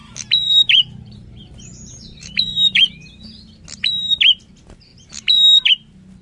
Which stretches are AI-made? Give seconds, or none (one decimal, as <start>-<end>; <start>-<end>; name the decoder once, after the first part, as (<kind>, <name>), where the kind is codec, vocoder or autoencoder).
0.0-2.9 (vocoder, BigVGAN v2); 4.9-5.7